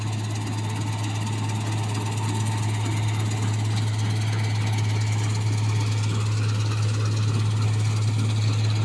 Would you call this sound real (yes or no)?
yes